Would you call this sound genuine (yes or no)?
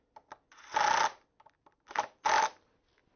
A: yes